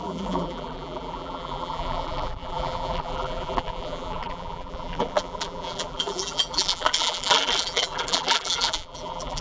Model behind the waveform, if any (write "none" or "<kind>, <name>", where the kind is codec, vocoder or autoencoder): vocoder, BigVGAN v2